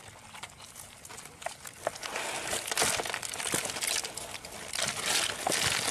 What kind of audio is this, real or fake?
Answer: real